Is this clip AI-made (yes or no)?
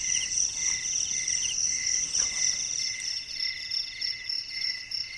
no